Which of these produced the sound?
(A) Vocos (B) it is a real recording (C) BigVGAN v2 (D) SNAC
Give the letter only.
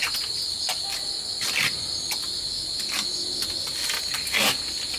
B